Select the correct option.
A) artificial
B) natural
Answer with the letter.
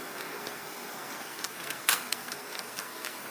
A